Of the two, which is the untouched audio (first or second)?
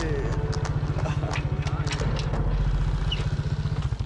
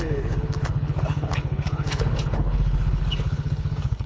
first